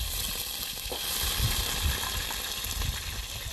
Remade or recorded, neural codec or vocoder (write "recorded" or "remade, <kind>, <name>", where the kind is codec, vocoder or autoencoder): recorded